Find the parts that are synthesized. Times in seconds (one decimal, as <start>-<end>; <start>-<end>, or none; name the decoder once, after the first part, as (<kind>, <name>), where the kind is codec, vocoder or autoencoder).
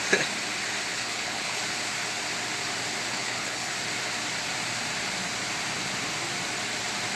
0.9-1.6 (codec, HILCodec); 3.1-3.7